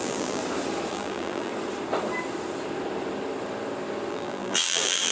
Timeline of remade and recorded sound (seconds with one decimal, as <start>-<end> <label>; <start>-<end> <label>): 0.0-0.4 remade; 0.4-0.9 recorded; 0.9-1.5 remade; 1.5-4.1 recorded; 4.1-5.1 remade